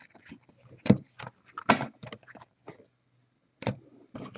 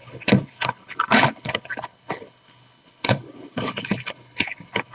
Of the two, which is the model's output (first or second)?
second